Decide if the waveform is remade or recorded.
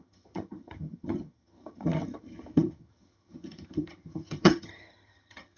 remade